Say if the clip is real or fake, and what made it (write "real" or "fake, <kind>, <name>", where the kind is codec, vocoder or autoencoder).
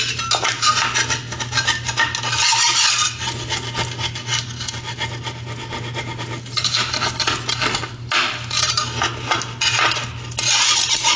real